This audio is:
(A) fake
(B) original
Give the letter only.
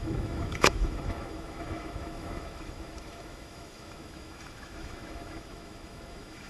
A